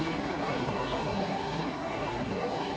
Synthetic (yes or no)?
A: yes